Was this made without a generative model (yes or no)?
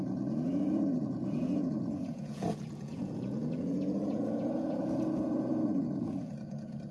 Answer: no